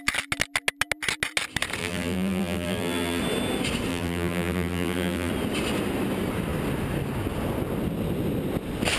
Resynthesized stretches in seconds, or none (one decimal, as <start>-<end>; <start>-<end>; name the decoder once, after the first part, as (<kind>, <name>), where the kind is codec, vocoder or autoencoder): 1.8-3.2 (vocoder, BigVGAN v2); 3.9-5.3